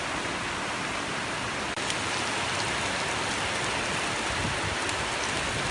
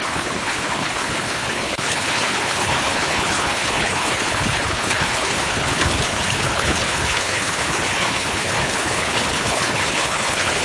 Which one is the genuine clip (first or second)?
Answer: first